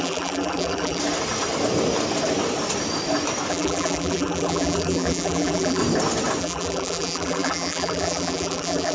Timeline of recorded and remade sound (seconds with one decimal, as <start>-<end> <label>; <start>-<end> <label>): 0.0-1.0 remade; 1.0-3.5 recorded; 3.5-5.8 remade; 5.8-6.4 recorded; 6.4-8.9 remade